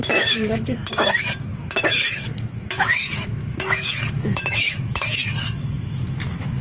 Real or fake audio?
fake